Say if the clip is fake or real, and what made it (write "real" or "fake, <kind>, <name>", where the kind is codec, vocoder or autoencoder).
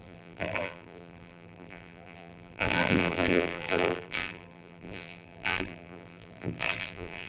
fake, vocoder, BigVGAN v2